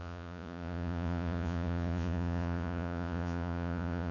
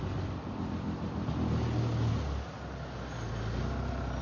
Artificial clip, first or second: first